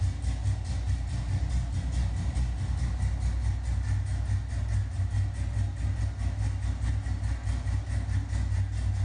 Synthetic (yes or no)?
no